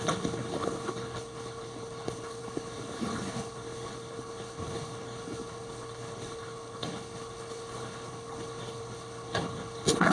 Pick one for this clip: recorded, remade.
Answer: remade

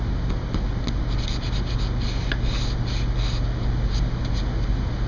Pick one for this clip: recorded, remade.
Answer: recorded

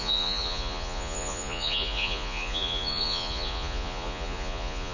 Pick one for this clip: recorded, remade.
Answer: remade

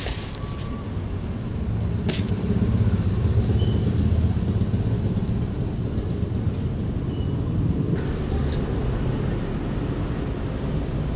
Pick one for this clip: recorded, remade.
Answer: recorded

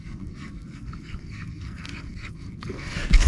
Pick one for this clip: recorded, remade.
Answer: remade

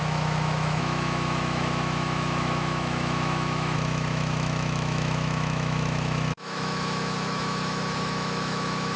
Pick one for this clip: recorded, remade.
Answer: remade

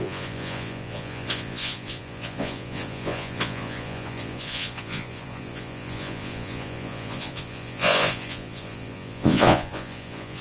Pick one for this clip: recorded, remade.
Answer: remade